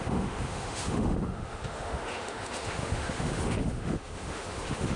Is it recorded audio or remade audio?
remade